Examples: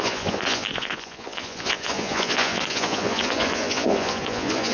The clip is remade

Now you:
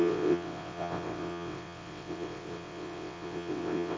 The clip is remade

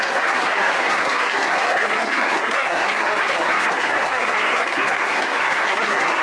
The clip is remade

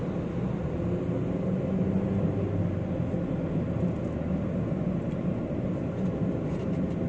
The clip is recorded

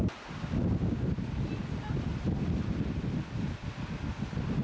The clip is recorded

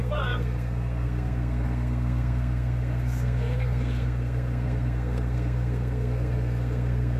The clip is remade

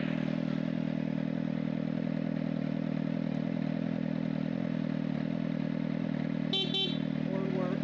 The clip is recorded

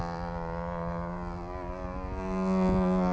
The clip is recorded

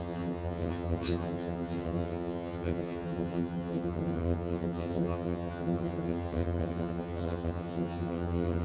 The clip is remade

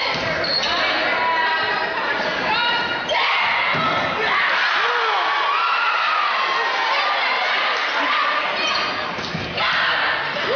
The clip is recorded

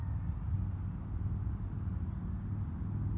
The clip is recorded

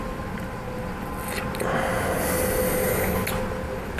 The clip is recorded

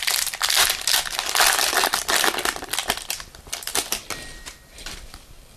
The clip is recorded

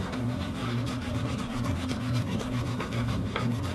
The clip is remade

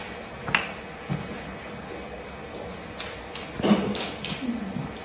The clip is recorded